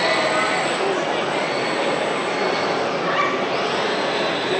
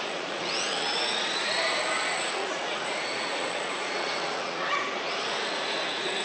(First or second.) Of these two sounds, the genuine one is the first